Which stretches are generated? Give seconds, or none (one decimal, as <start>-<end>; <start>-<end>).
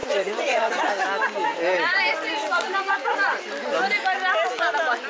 0.0-0.7